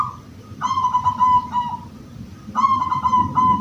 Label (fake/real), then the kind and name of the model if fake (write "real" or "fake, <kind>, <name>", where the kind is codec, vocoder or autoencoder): real